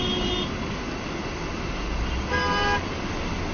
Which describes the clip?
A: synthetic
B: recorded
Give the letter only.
B